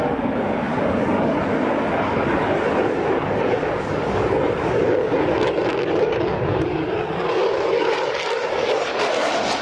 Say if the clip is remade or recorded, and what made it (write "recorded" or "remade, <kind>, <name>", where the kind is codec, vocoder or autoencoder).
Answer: remade, codec, DAC